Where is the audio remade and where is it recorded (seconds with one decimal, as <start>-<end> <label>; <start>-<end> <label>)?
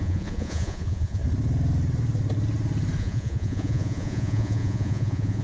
0.0-1.2 remade; 1.2-3.0 recorded; 3.0-5.4 remade